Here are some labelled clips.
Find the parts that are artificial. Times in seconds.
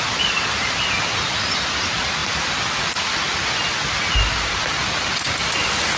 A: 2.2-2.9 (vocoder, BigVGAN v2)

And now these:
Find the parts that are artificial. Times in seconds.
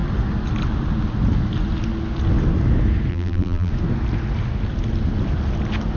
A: 3.1-3.7 (vocoder, BigVGAN v2)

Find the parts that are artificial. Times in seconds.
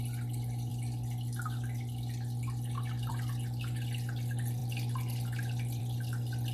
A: none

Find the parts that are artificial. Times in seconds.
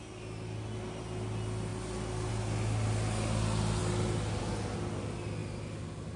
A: none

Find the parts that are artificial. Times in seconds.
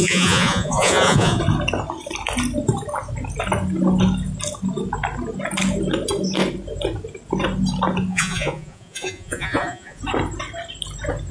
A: 0.0-1.4 (vocoder, Vocos); 8.1-10.0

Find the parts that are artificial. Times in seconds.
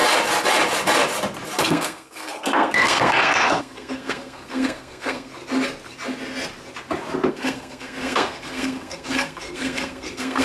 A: 1.6-5.3 (codec, SNAC); 7.3-10.4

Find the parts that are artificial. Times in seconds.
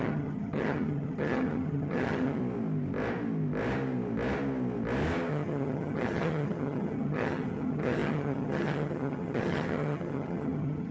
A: 0.0-2.4 (vocoder, HiFi-GAN); 5.3-10.9